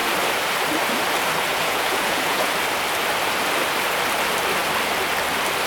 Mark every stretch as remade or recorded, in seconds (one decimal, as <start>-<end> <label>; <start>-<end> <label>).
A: 0.0-1.5 recorded; 1.5-2.5 remade; 2.5-5.7 recorded